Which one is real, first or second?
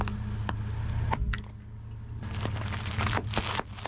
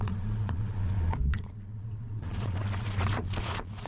first